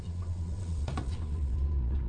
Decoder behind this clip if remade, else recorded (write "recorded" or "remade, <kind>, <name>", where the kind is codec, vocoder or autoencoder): remade, vocoder, Vocos